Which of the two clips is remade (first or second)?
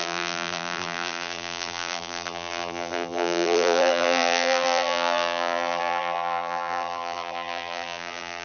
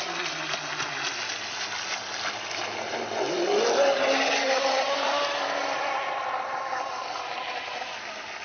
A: first